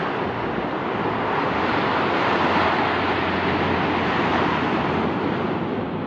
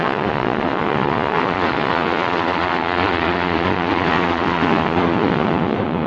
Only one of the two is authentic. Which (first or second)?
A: first